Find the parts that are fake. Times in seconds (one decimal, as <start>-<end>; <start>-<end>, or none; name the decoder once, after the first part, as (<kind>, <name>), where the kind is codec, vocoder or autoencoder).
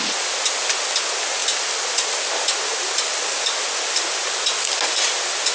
none